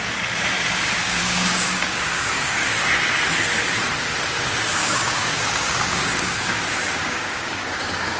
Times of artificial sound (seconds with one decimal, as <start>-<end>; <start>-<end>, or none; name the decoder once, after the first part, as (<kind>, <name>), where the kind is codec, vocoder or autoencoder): 1.0-2.8 (codec, DAC); 4.8-8.2